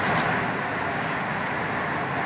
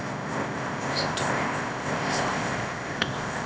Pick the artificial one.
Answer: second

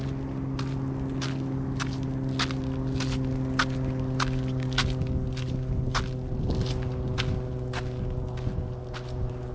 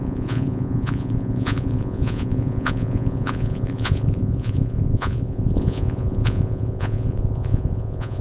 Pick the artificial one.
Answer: second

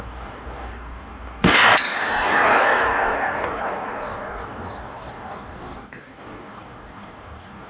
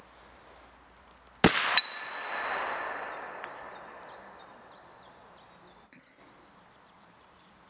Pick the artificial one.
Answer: first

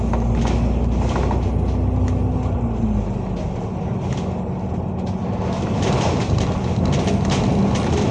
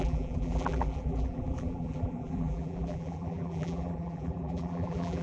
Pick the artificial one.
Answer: second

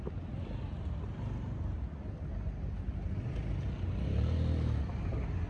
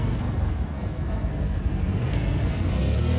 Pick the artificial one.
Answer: second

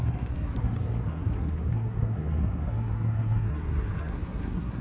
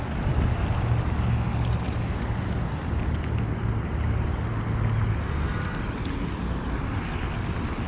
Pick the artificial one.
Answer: first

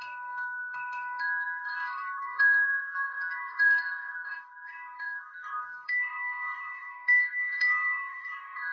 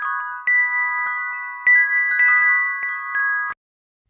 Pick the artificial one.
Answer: first